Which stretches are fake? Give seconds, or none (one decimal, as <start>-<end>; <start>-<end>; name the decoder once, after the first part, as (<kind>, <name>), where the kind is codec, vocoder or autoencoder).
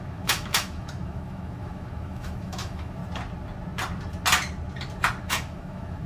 0.0-3.0 (autoencoder, DAC-VAE); 5.2-6.1